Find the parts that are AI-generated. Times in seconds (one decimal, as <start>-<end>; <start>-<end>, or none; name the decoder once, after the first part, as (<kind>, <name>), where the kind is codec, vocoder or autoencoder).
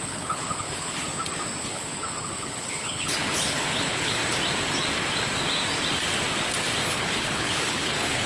0.0-1.0 (codec, HILCodec); 1.6-4.2; 6.9-8.3